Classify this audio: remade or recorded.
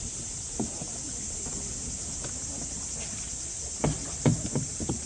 recorded